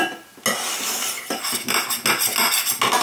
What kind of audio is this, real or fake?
real